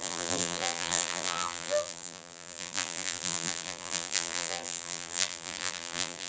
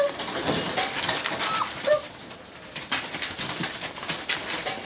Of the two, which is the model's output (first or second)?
first